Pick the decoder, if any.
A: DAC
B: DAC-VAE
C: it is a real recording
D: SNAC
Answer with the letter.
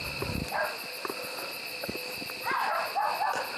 C